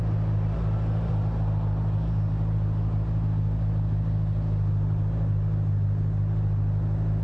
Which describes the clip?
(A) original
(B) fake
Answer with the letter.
A